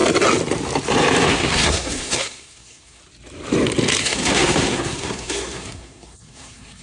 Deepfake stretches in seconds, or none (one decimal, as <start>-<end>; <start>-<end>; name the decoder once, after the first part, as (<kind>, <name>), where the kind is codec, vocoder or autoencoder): 1.3-3.0 (codec, SNAC); 4.0-6.8